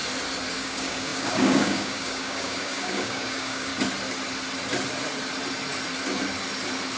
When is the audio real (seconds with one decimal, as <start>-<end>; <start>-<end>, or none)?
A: 0.0-0.5; 3.7-7.0